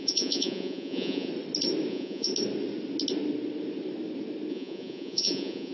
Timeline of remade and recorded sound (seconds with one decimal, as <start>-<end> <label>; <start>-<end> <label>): 0.0-1.3 remade; 1.3-1.9 recorded; 1.9-2.3 remade; 2.3-4.5 recorded; 4.5-5.7 remade